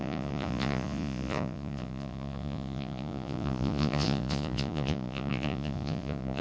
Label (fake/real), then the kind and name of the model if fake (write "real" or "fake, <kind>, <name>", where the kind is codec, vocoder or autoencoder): fake, vocoder, Vocos